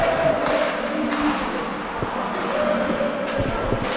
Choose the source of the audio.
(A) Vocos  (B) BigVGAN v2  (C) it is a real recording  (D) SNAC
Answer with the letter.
C